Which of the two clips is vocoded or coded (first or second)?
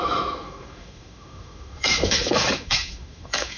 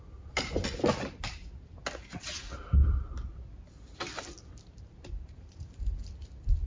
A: first